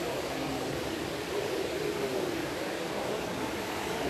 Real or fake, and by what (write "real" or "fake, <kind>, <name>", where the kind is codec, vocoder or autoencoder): fake, codec, DAC